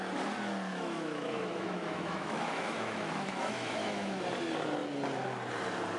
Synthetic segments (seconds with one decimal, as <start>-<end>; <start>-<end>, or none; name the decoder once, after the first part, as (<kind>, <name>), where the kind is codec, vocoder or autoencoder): 0.7-4.2 (autoencoder, DAC-VAE)